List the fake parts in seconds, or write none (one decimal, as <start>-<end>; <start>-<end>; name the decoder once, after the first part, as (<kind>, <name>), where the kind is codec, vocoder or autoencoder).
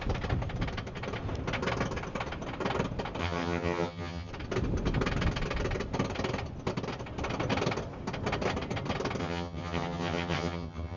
3.2-4.3 (vocoder, HiFi-GAN); 9.2-11.0